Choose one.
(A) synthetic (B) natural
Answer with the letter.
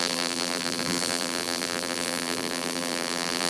A